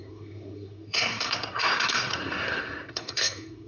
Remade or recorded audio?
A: remade